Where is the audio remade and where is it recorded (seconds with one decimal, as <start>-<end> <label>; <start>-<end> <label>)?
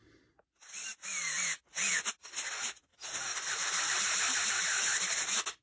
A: 0.0-5.6 recorded